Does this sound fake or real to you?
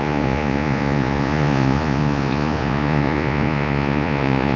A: fake